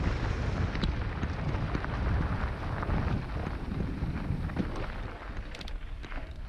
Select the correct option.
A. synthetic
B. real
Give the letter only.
B